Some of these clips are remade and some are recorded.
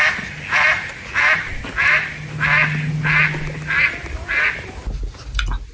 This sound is recorded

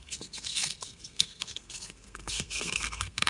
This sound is remade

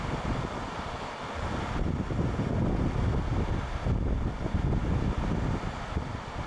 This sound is recorded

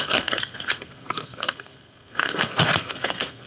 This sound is remade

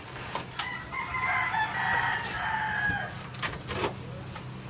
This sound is recorded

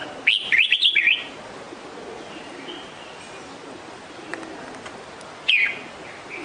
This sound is recorded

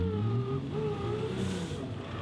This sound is recorded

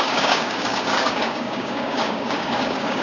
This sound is remade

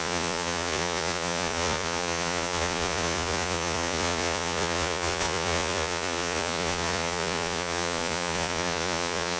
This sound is remade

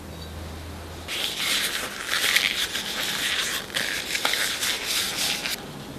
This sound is remade